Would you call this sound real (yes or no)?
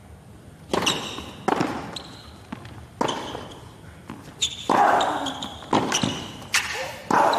yes